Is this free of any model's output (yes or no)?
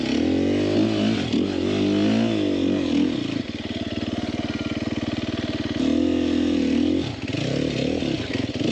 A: yes